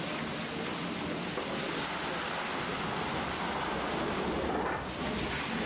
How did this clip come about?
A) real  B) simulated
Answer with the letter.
A